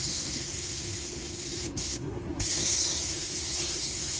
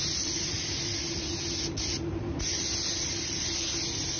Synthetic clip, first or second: first